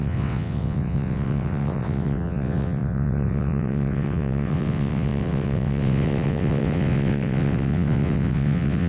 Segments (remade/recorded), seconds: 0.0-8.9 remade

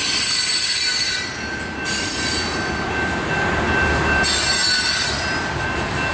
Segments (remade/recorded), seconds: 0.0-6.1 recorded